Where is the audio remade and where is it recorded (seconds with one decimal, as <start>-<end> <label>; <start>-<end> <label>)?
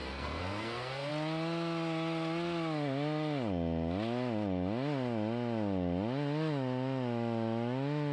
0.0-1.1 remade; 1.1-8.1 recorded